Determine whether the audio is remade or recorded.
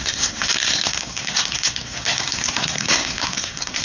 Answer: remade